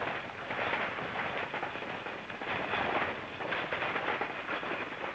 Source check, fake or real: real